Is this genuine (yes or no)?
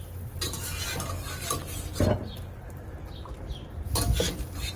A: yes